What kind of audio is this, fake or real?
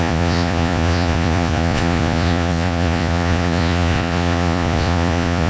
fake